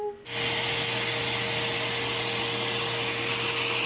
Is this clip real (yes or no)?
yes